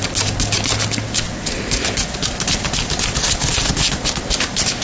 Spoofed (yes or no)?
no